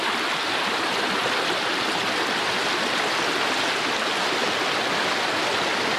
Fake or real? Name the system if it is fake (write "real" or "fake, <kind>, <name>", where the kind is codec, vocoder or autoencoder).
real